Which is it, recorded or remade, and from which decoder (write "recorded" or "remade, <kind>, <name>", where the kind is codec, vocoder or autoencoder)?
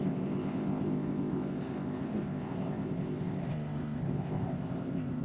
remade, codec, ZipCodec